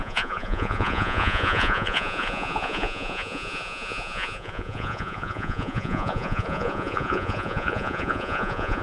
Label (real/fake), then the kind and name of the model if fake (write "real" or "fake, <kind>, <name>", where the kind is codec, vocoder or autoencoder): fake, vocoder, Vocos